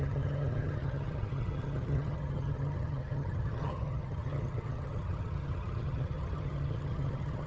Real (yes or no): no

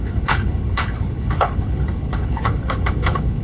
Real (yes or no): no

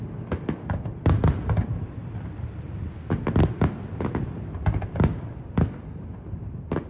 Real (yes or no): yes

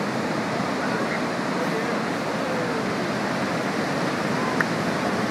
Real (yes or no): yes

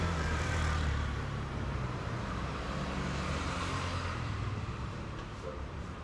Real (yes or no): no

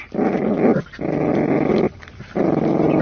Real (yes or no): yes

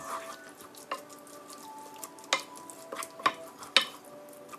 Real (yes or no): yes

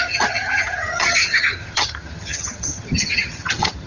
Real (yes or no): no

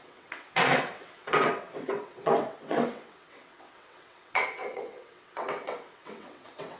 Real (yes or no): no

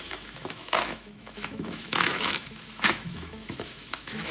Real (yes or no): no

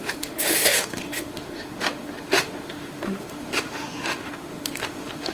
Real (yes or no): no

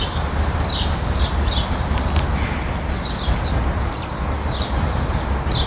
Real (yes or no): yes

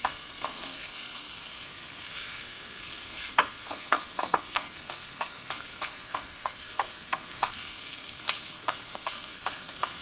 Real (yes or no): no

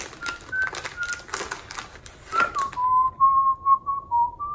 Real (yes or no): yes